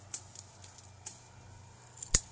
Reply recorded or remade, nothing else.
recorded